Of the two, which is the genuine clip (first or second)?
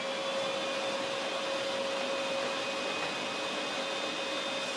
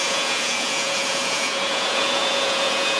first